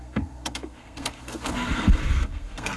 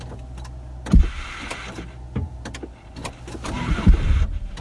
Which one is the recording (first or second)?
second